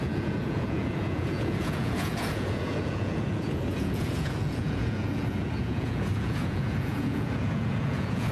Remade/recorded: remade